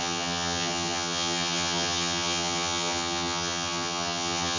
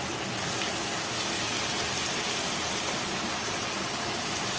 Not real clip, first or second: first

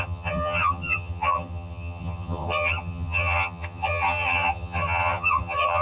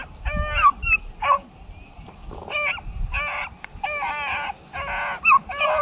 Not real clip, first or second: first